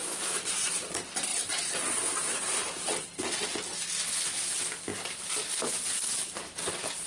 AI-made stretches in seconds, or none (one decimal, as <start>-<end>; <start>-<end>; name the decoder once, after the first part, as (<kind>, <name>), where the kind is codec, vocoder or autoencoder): 0.0-1.3 (vocoder, BigVGAN v2); 4.0-7.1